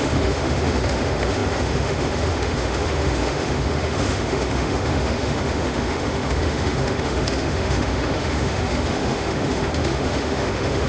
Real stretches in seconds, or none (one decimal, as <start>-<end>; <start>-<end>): none